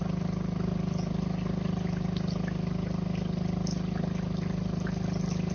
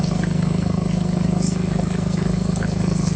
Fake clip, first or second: second